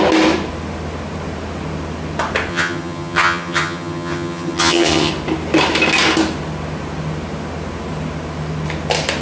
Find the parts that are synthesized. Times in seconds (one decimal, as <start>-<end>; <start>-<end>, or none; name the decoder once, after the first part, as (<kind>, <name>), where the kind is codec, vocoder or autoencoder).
2.5-5.1 (vocoder, HiFi-GAN)